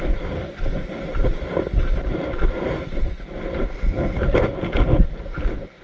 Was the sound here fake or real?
real